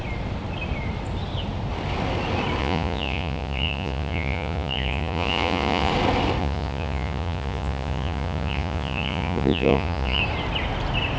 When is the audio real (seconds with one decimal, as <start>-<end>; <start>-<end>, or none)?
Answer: 0.0-2.6; 5.9-6.4; 10.2-11.2